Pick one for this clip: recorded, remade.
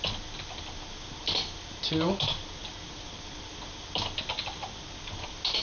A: recorded